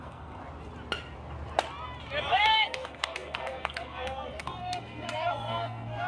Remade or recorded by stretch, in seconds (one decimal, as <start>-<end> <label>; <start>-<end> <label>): 0.0-0.4 remade; 0.4-2.3 recorded; 2.3-6.1 remade